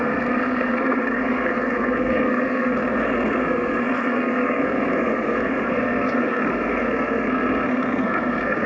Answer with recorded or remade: remade